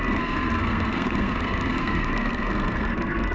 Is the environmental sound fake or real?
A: fake